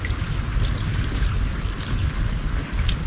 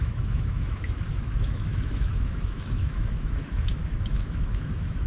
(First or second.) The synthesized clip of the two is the second